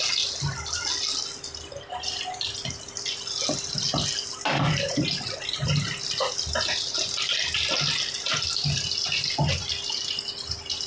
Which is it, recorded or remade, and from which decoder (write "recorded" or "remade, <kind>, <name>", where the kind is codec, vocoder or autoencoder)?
recorded